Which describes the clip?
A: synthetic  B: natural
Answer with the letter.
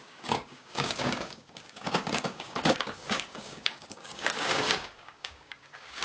A